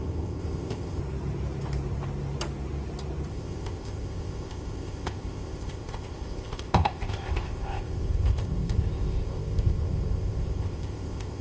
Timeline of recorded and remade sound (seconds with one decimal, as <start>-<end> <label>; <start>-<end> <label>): 0.0-1.0 remade; 1.0-3.3 recorded; 3.3-11.4 remade